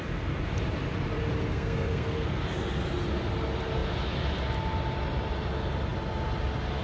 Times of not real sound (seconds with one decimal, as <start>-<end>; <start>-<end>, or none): 1.4-2.4